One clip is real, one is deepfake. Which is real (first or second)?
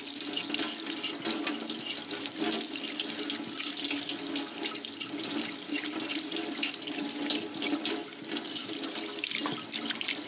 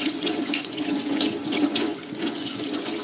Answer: first